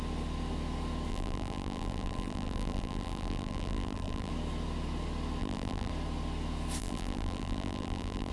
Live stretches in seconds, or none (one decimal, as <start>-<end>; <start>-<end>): 0.0-1.1; 4.3-5.4; 5.9-6.8